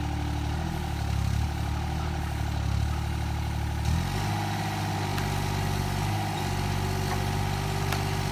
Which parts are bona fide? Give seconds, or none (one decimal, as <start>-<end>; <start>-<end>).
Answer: 0.0-8.3